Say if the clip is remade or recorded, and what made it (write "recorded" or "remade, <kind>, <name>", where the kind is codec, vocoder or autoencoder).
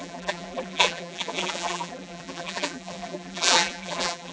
remade, vocoder, BigVGAN v2